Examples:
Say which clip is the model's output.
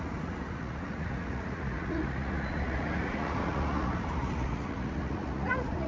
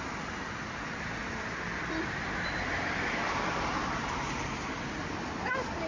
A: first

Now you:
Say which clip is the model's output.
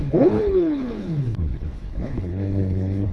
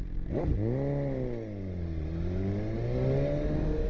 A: first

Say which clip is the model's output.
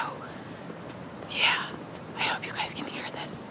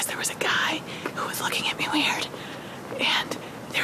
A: first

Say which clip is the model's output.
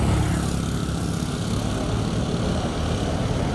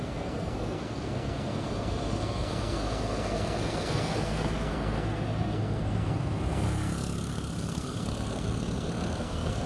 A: second